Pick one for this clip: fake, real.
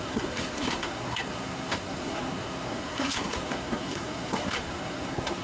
fake